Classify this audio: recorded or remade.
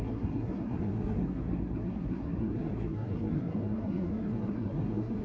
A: remade